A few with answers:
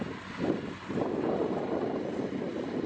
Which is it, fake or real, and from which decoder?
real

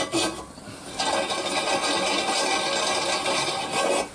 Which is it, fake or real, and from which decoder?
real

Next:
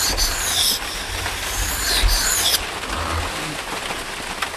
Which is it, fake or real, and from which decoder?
real